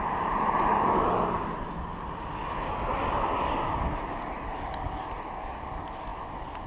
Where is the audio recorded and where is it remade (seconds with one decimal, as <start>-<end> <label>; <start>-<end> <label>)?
0.0-6.7 recorded